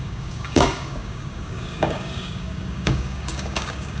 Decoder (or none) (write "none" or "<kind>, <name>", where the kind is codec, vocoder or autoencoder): codec, DAC